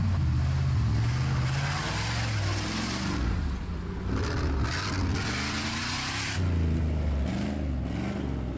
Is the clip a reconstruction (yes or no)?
no